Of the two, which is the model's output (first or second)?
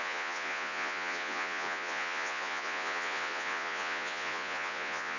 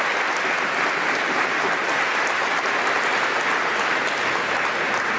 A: first